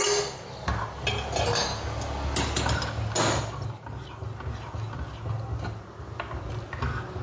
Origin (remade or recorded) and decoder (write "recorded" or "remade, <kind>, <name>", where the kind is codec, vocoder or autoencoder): recorded